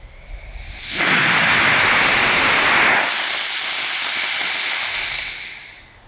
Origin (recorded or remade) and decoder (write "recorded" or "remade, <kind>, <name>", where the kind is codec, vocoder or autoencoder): recorded